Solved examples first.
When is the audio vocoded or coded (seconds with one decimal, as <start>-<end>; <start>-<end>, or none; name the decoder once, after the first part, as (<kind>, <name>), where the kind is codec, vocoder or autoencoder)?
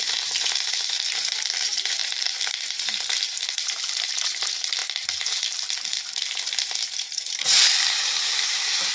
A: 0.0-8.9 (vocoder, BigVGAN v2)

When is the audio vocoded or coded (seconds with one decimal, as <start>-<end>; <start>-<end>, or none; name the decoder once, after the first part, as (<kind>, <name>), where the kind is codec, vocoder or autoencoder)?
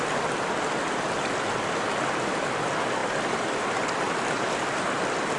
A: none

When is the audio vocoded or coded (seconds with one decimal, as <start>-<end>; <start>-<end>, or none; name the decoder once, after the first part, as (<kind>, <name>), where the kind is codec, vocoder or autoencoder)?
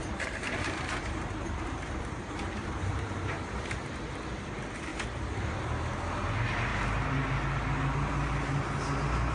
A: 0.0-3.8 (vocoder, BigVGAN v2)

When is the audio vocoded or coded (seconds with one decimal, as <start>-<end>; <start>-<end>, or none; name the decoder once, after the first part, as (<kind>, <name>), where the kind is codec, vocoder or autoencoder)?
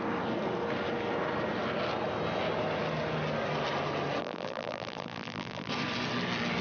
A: 4.2-5.7 (vocoder, BigVGAN v2)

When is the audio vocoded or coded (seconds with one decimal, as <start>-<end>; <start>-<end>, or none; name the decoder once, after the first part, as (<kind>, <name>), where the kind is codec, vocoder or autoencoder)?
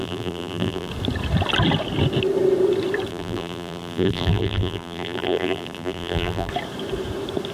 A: 0.0-0.9 (vocoder, BigVGAN v2); 3.1-6.5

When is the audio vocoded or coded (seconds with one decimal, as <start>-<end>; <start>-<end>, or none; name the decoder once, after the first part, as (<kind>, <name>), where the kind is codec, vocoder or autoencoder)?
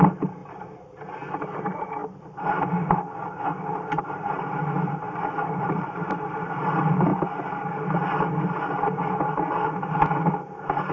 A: 0.0-0.4 (vocoder, BigVGAN v2); 1.6-2.0; 5.6-7.1